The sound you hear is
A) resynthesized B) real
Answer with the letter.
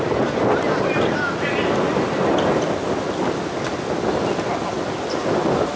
B